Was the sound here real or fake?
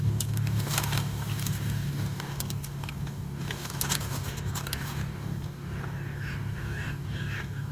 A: fake